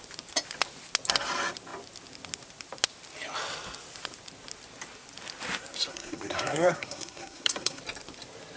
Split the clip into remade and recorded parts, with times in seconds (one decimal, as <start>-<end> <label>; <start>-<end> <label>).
0.0-5.9 recorded; 5.9-7.8 remade; 7.8-8.6 recorded